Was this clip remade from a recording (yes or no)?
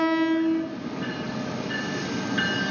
no